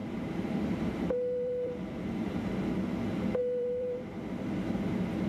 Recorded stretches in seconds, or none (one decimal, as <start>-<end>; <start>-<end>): 2.5-3.4; 4.2-5.3